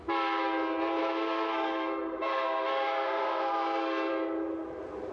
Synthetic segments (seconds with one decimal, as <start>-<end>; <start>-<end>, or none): 1.0-4.1